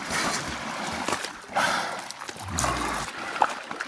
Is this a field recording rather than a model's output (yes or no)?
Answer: yes